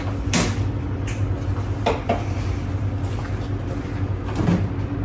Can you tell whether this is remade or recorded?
recorded